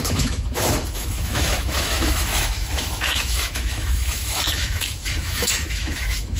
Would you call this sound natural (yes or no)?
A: no